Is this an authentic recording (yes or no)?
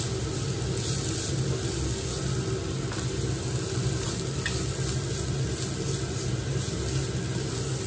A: yes